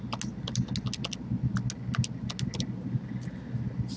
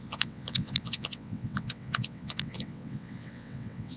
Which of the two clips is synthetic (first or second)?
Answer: second